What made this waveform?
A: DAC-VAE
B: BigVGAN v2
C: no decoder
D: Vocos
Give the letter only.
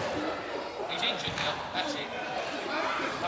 B